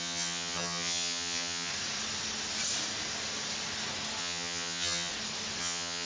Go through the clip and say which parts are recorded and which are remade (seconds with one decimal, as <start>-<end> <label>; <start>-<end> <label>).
0.0-1.7 remade; 1.7-4.2 recorded; 4.2-5.1 remade; 5.1-5.6 recorded; 5.6-6.1 remade